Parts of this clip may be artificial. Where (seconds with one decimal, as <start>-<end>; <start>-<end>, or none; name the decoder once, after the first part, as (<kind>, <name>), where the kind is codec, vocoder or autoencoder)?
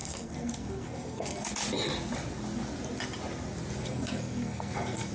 0.0-1.5 (codec, SNAC); 3.8-5.1